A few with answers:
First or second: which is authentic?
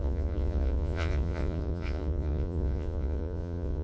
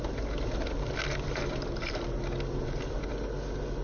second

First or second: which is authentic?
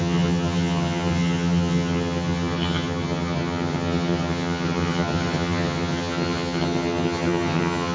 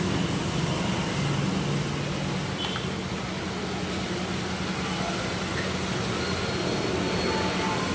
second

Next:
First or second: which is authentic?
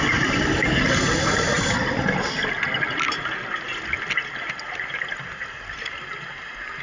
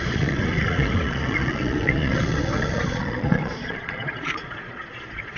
first